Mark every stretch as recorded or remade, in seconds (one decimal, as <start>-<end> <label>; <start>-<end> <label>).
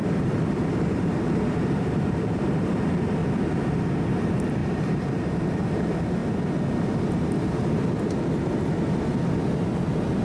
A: 0.0-3.2 remade; 3.2-4.1 recorded; 4.1-6.2 remade; 6.2-9.7 recorded; 9.7-10.2 remade